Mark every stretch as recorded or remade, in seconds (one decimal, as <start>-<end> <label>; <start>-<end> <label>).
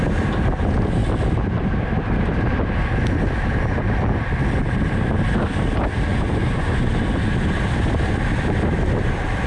0.0-6.1 recorded; 6.1-6.9 remade; 6.9-9.5 recorded